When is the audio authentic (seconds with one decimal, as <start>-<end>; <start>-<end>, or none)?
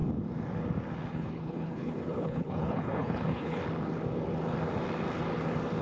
0.0-1.1; 3.6-5.8